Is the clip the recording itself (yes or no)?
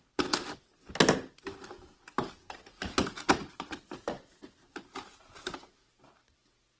yes